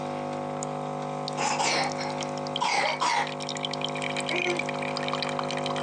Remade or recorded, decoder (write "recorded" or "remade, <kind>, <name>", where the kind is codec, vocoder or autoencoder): recorded